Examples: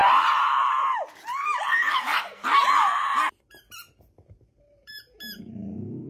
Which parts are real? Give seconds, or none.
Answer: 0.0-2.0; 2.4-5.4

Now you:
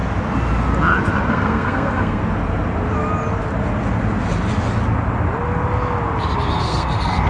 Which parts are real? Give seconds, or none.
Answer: 0.0-1.3; 2.2-6.6

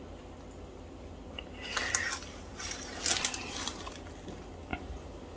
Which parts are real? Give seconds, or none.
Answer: 0.0-5.4

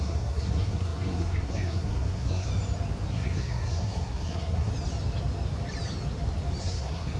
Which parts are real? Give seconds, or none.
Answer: 2.5-3.1; 4.7-6.6

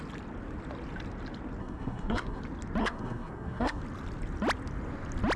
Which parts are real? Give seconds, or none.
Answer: 0.0-1.6; 2.4-2.8; 3.8-5.4

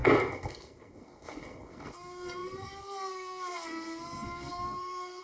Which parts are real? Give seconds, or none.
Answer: none

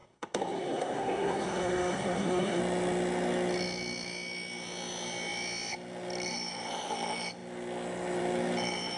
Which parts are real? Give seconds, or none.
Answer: 2.6-9.0